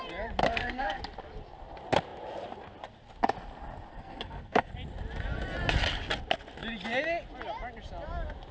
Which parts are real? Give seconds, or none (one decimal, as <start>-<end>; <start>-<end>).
0.0-0.4; 1.0-3.9; 4.7-8.5